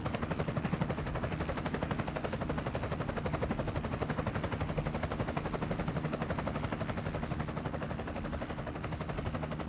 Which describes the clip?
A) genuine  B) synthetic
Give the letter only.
A